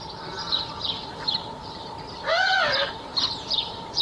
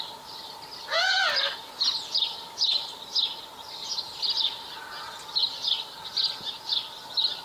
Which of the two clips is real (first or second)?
second